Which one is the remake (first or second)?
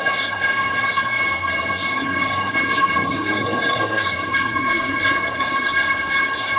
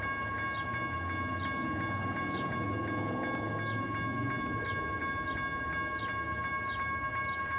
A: first